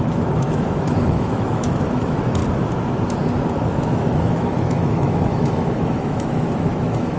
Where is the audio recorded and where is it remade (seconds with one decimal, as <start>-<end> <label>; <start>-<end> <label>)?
0.0-2.4 remade; 2.4-3.8 recorded; 3.8-7.2 remade